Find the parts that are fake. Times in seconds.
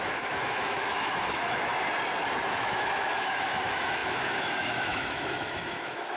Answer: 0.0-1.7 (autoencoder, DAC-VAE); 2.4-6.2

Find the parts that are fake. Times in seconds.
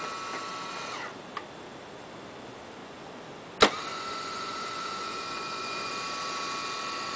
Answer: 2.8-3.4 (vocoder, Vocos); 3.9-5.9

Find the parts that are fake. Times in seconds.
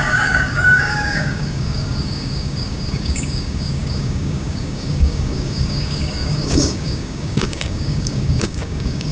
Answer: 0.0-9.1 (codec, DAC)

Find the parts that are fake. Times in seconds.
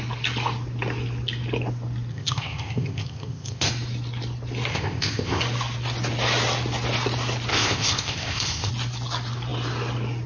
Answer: 2.1-3.7 (codec, ZipCodec); 4.7-5.4; 7.5-8.7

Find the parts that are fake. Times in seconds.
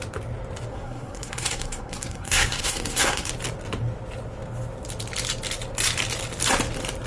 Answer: 0.7-3.3 (codec, SNAC)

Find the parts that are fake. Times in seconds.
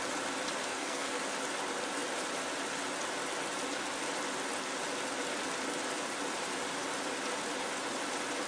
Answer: 0.6-1.2 (codec, SNAC)